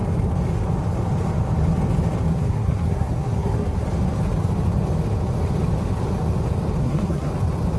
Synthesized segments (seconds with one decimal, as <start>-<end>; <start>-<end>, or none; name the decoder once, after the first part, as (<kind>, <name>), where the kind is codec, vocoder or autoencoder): 2.3-3.8 (codec, SNAC); 6.8-7.3